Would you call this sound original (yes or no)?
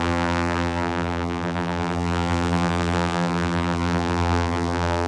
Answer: no